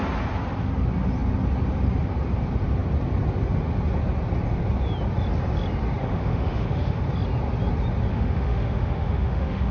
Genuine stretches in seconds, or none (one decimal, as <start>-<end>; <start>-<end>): 0.0-6.0; 7.0-8.1